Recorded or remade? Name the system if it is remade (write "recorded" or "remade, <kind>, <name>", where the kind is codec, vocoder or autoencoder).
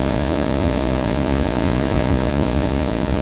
remade, vocoder, Vocos